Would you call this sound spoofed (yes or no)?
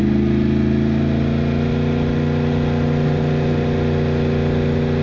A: no